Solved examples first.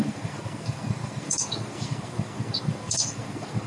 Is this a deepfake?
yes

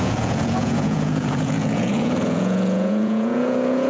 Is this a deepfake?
yes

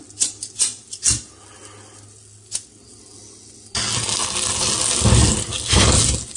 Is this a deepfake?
no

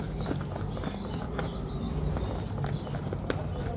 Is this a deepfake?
no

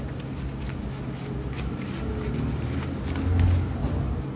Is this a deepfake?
no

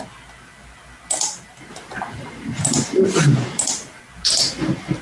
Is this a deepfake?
no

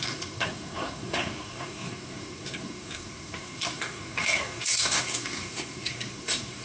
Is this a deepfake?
yes